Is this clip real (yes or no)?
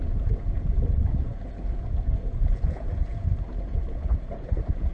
no